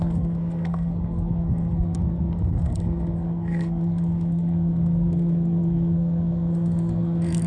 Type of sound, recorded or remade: remade